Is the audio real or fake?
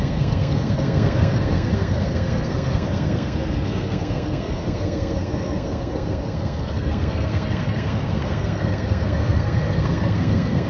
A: fake